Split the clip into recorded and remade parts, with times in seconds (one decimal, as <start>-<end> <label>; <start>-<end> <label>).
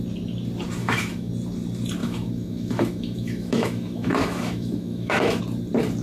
0.0-0.8 recorded; 0.8-1.3 remade; 1.3-2.0 recorded; 2.0-5.4 remade; 5.4-6.0 recorded